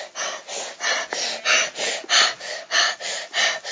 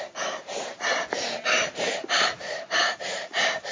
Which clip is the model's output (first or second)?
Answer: second